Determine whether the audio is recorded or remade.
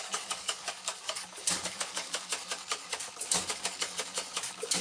remade